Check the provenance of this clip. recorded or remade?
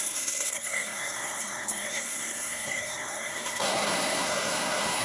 remade